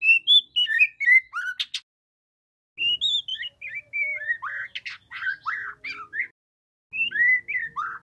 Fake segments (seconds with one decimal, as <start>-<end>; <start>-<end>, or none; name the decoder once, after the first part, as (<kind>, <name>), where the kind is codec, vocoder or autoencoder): none